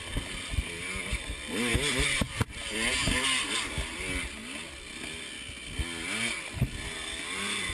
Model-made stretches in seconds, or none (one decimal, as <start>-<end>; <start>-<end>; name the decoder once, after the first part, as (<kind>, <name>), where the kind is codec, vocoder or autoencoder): none